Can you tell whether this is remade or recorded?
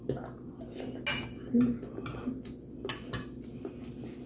recorded